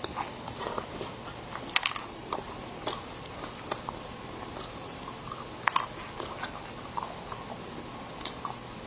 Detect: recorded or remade recorded